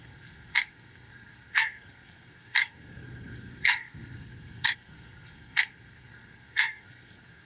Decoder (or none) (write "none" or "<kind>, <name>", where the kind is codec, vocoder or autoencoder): codec, SNAC